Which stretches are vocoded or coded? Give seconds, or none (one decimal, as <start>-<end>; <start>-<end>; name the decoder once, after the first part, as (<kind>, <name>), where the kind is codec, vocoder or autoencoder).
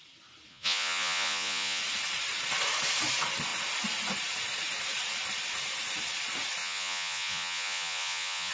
0.5-1.8 (vocoder, Vocos); 6.6-8.5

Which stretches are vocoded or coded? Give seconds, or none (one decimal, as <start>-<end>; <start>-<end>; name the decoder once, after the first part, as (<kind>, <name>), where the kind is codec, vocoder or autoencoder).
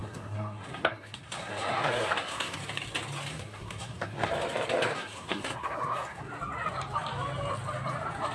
0.0-2.6 (codec, SNAC); 3.3-4.3; 4.9-6.3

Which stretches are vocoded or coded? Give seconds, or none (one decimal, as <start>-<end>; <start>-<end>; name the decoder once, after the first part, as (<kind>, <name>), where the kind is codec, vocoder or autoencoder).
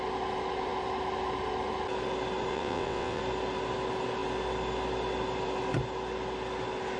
2.5-3.2 (vocoder, WaveNeXt)